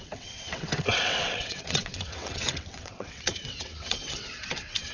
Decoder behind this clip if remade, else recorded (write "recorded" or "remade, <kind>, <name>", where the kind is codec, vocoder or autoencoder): remade, vocoder, WaveNeXt